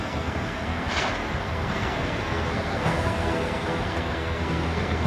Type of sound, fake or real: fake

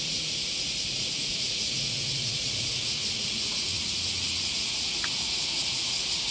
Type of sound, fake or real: fake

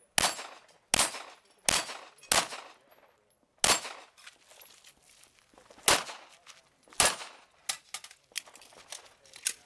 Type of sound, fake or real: real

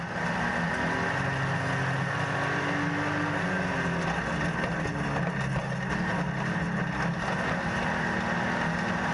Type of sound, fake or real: real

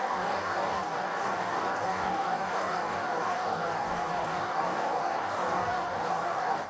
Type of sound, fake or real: fake